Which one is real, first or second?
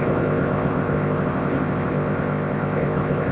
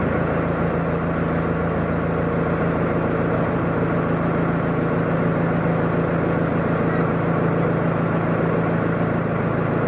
second